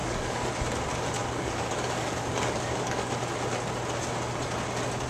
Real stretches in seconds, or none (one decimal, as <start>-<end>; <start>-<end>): 0.5-1.2; 3.1-5.1